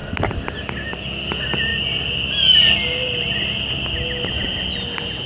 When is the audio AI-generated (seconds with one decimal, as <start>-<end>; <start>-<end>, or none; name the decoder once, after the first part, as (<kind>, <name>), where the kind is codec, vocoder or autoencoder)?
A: none